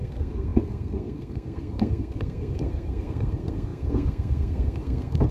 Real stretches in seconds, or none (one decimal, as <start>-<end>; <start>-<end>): none